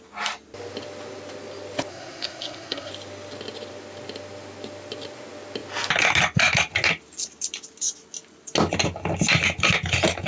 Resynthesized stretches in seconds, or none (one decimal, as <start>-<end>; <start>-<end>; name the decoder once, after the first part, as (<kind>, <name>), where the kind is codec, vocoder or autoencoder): 1.9-2.9 (codec, SNAC)